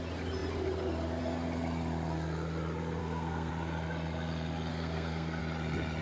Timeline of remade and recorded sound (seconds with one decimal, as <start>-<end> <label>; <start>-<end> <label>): 0.0-3.0 recorded; 3.0-3.5 remade; 3.5-4.7 recorded; 4.7-5.4 remade; 5.4-6.0 recorded